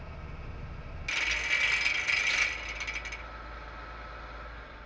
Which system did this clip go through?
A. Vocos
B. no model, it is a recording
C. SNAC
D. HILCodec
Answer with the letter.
B